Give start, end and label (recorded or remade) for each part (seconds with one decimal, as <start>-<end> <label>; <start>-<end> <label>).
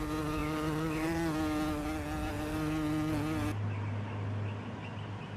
0.0-5.4 recorded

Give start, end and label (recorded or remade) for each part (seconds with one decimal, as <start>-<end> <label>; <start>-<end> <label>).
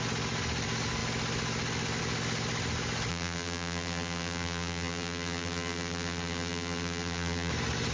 0.0-3.1 recorded; 3.1-7.5 remade; 7.5-7.9 recorded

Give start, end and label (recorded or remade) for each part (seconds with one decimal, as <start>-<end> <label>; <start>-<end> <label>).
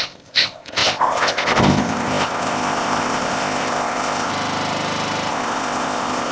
0.0-4.3 remade; 4.3-5.3 recorded; 5.3-6.3 remade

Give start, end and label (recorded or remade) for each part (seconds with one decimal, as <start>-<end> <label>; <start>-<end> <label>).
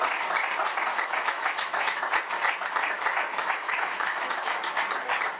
0.0-0.9 recorded; 0.9-2.0 remade; 2.0-3.3 recorded; 3.3-4.7 remade; 4.7-5.4 recorded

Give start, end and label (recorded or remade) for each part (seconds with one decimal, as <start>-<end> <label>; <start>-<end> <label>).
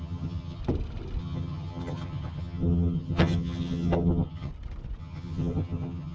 0.0-0.6 remade; 0.6-1.2 recorded; 1.2-4.5 remade; 4.5-5.0 recorded; 5.0-6.1 remade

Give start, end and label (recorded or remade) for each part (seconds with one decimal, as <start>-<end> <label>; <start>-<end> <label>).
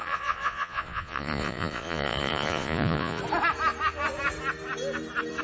0.0-3.2 remade; 3.2-5.4 recorded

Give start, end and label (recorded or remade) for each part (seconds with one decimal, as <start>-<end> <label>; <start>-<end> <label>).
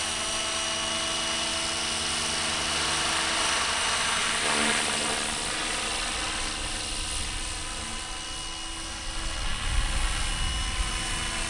0.0-11.5 recorded